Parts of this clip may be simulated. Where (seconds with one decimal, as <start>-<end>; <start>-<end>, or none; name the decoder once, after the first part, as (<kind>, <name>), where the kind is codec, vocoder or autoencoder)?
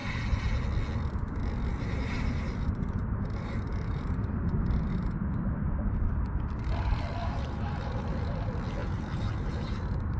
1.7-6.1 (vocoder, BigVGAN v2); 7.2-8.4; 8.8-10.2